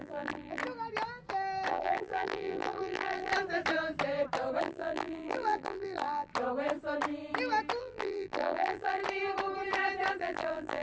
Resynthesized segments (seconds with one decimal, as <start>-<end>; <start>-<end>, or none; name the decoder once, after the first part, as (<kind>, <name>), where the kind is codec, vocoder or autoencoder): 0.0-0.6 (vocoder, BigVGAN v2); 1.7-3.3; 4.6-6.3; 7.8-9.0; 10.2-10.8